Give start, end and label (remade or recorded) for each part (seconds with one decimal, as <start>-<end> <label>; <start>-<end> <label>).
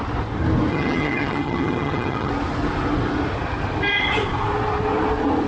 0.0-0.7 recorded; 0.7-2.3 remade; 2.3-5.5 recorded